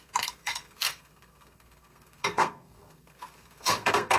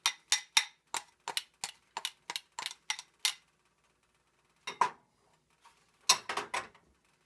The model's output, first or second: first